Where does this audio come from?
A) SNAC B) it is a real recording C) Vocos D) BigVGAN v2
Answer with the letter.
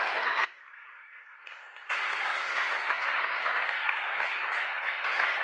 A